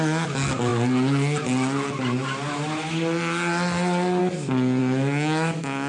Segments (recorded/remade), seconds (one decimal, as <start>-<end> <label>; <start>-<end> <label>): 0.0-4.8 recorded; 4.8-5.9 remade